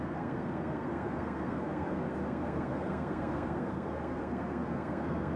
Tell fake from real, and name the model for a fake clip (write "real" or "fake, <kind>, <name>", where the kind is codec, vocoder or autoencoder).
fake, codec, SNAC